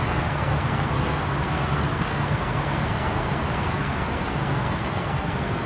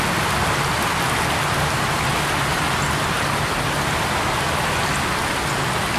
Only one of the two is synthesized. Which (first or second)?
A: first